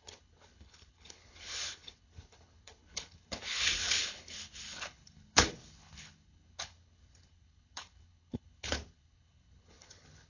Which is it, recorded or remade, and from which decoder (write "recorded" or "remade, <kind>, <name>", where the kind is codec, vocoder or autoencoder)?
remade, codec, HILCodec